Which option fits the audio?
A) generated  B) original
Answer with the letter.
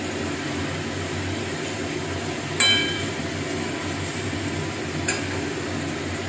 B